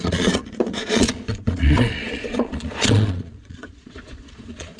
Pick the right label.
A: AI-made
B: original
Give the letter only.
A